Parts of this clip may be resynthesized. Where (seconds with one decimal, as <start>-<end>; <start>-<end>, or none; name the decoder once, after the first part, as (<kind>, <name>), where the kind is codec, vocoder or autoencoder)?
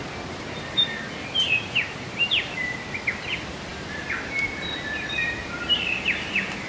none